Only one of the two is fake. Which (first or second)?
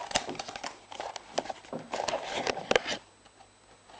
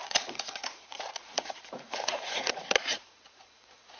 second